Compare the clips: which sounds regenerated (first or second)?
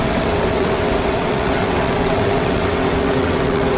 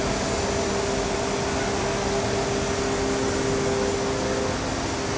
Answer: first